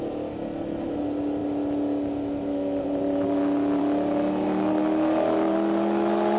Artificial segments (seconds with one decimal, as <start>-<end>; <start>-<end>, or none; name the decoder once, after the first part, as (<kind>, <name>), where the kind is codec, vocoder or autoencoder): none